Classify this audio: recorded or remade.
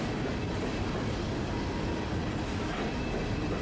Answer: recorded